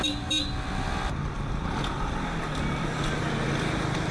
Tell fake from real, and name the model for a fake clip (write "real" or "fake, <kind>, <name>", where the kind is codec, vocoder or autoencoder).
real